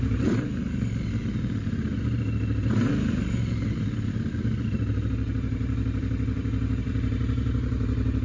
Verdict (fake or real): fake